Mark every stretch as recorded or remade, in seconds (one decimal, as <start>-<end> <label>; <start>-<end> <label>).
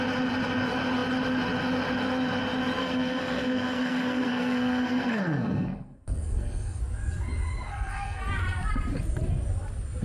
0.0-2.8 recorded; 2.8-6.8 remade; 6.8-7.7 recorded; 7.7-8.3 remade; 8.3-10.0 recorded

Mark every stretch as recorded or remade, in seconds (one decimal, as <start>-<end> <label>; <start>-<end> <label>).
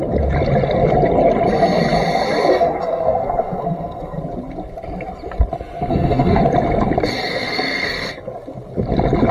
0.0-2.5 recorded; 2.5-4.2 remade; 4.2-5.9 recorded; 5.9-6.4 remade; 6.4-7.3 recorded; 7.3-8.1 remade; 8.1-9.3 recorded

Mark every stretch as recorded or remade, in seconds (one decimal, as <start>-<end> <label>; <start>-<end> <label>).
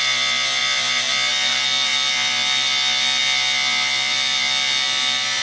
0.0-5.4 recorded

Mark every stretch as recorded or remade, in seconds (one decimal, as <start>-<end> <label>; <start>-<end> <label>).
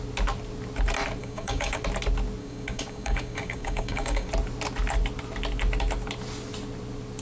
0.0-1.2 recorded; 1.2-1.8 remade; 1.8-2.4 recorded; 2.4-4.3 remade; 4.3-7.2 recorded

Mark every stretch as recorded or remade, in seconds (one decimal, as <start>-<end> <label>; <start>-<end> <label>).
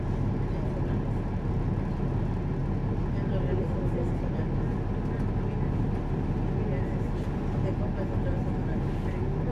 0.0-9.5 recorded